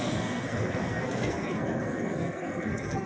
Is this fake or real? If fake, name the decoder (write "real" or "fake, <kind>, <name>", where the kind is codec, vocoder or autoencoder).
fake, codec, SNAC